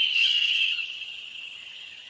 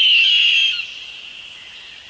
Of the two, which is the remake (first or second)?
first